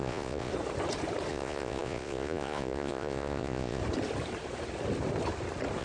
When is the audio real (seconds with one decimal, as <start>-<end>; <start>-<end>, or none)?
0.5-1.3; 3.8-5.8